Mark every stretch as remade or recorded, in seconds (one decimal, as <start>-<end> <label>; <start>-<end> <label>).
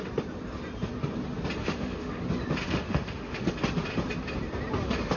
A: 0.0-1.6 recorded; 1.6-2.2 remade; 2.2-2.6 recorded; 2.6-3.5 remade; 3.5-5.2 recorded